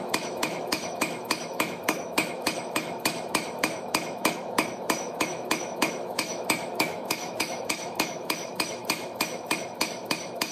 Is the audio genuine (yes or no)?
no